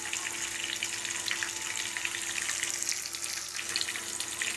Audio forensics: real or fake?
real